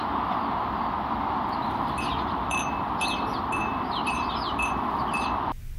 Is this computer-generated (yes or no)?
yes